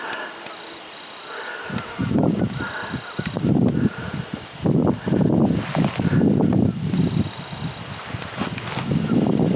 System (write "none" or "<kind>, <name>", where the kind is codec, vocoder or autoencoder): none